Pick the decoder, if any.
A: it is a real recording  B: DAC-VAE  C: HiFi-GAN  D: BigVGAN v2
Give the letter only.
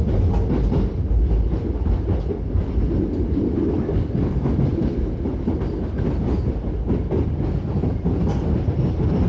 A